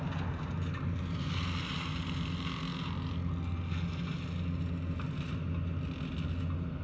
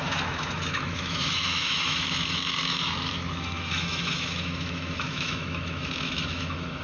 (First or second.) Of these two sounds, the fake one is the second